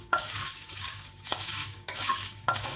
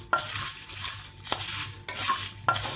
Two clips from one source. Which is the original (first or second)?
second